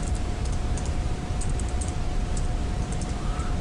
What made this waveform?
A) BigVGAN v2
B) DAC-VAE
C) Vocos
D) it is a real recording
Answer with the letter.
A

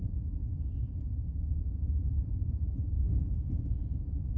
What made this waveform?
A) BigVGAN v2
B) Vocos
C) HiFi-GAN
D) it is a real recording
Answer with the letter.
A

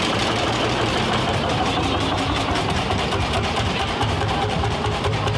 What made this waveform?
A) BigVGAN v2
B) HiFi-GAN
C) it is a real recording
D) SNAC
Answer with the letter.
A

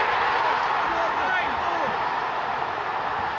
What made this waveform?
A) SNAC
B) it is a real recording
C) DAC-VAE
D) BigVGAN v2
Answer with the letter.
B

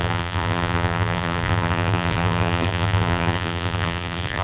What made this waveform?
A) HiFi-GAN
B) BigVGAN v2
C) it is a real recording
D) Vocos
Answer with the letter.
B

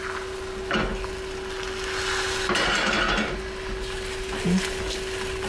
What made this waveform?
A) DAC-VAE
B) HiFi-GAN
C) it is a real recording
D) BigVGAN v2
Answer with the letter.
C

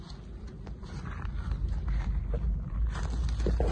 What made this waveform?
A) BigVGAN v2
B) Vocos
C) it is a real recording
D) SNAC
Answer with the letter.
C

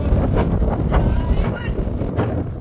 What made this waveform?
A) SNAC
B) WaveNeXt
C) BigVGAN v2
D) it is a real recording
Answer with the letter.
C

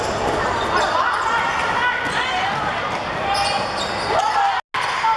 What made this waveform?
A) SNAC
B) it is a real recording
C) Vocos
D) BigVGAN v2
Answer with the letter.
B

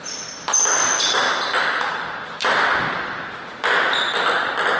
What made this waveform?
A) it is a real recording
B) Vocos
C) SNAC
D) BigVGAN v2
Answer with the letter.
A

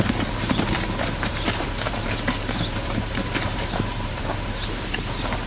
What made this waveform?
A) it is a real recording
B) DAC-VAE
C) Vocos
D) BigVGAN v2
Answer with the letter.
D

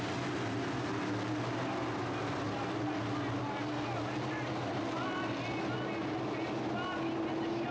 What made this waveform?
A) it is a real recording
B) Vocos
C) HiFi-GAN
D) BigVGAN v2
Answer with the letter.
A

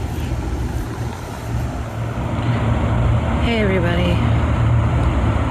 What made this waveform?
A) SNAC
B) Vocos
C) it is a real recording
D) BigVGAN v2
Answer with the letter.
C